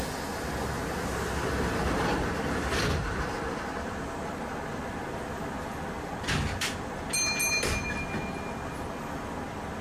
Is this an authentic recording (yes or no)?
yes